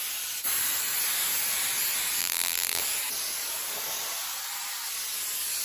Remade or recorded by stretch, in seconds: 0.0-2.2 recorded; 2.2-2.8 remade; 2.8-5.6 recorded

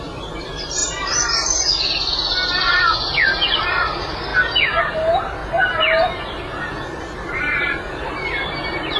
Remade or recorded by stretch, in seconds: 0.0-0.8 remade; 0.8-3.7 recorded; 3.7-4.3 remade; 4.3-4.8 recorded; 4.8-5.4 remade; 5.4-7.0 recorded; 7.0-9.0 remade

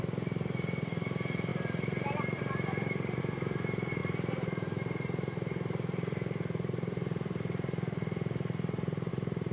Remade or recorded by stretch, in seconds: 0.0-1.5 recorded; 1.5-3.2 remade; 3.2-4.0 recorded; 4.0-9.1 remade; 9.1-9.5 recorded